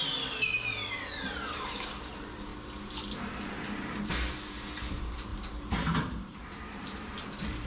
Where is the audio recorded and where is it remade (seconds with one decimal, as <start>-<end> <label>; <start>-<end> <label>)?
0.0-0.5 remade; 0.5-1.5 recorded; 1.5-2.5 remade; 2.5-3.5 recorded; 3.5-7.7 remade